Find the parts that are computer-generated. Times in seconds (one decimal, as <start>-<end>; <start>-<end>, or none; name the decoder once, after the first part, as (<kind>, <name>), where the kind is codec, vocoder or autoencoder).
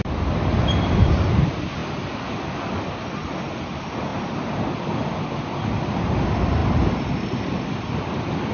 0.0-1.8 (vocoder, BigVGAN v2); 2.5-4.1; 5.8-6.6; 7.1-8.5